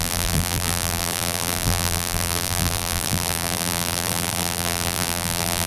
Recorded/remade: remade